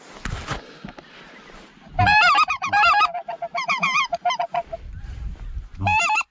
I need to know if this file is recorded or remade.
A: recorded